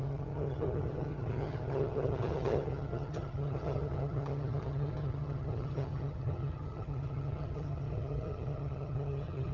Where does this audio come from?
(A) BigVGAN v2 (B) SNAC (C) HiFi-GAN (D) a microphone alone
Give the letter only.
C